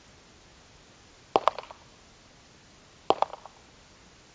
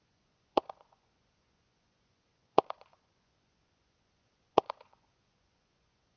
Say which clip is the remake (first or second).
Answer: second